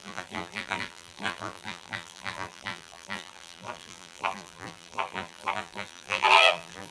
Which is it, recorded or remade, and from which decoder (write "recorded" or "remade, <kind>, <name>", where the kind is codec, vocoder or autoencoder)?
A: remade, vocoder, BigVGAN v2